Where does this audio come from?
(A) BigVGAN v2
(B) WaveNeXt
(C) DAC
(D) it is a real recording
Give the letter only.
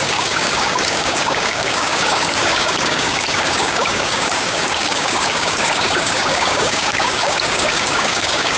C